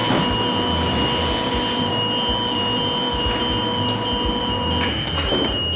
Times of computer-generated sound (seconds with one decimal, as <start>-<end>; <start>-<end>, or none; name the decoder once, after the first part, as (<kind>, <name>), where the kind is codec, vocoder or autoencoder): none